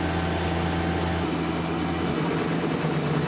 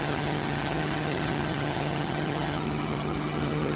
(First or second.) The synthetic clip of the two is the second